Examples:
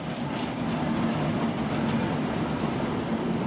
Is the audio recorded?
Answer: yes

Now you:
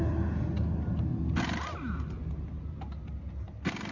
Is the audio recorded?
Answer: yes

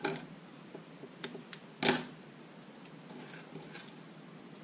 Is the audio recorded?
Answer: yes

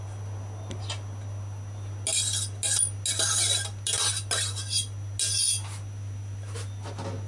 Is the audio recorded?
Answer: yes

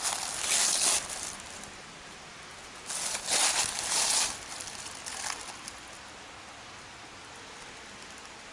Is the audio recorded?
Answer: yes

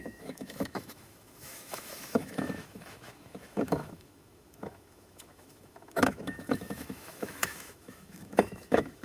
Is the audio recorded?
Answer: no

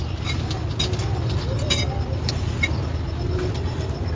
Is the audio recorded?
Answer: yes